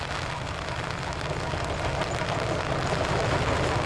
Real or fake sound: real